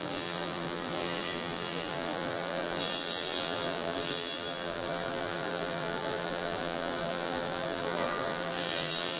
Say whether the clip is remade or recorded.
remade